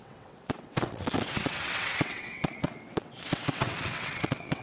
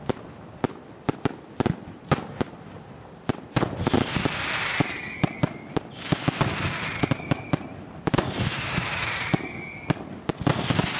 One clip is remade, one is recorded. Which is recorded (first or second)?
second